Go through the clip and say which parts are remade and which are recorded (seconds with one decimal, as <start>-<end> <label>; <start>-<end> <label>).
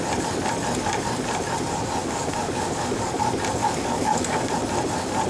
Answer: 0.0-2.0 recorded; 2.0-3.2 remade; 3.2-3.6 recorded; 3.6-4.5 remade; 4.5-5.3 recorded